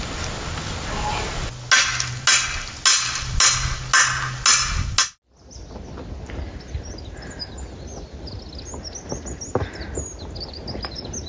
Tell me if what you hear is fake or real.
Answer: real